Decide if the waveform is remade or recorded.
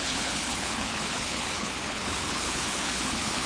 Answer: remade